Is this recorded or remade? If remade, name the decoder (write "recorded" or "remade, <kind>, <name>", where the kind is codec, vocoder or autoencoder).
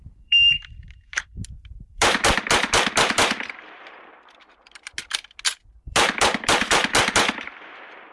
remade, vocoder, BigVGAN v2